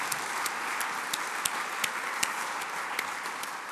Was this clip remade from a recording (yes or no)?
no